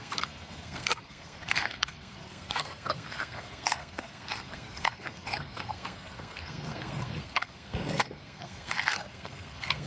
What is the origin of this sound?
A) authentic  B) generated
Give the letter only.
B